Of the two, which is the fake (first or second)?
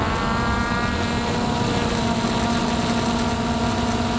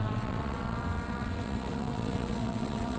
second